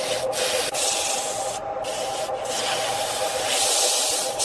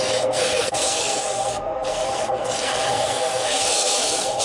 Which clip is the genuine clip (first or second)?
first